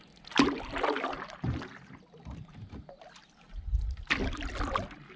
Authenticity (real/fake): real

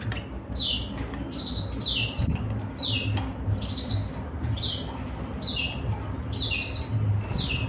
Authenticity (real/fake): real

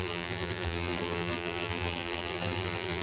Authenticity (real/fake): fake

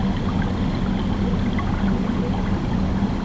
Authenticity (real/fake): real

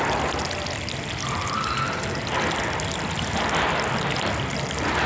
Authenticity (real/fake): real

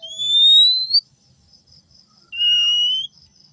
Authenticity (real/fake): real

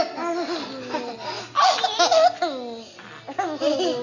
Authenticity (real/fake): real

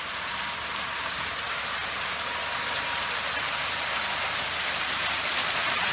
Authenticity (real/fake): fake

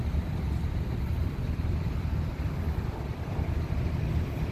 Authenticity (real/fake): fake